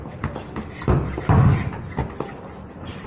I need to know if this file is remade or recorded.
recorded